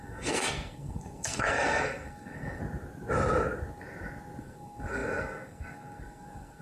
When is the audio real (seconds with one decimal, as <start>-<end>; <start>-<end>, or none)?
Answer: 2.6-4.4